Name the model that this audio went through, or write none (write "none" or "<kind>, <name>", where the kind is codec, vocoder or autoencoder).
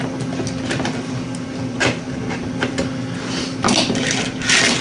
none